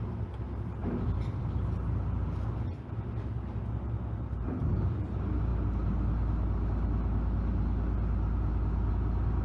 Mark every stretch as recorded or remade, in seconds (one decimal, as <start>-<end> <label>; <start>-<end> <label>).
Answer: 0.0-9.4 recorded